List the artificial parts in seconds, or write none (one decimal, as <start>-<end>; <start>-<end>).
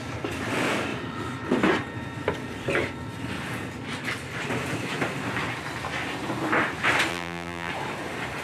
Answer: 7.1-7.7